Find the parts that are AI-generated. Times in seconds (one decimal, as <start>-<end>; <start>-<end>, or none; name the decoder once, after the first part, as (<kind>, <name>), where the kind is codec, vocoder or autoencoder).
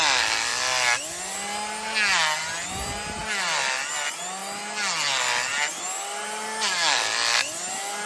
none